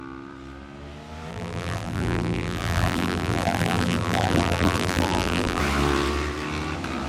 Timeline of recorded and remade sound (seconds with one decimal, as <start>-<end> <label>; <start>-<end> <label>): 0.0-1.3 recorded; 1.3-5.6 remade; 5.6-7.1 recorded